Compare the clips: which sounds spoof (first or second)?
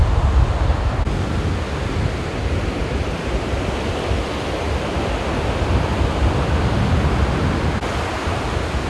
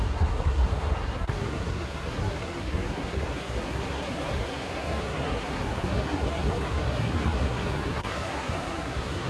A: second